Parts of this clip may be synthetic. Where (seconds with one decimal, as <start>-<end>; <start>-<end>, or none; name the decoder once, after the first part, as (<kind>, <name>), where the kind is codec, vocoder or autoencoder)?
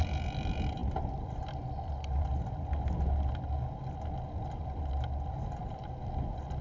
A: none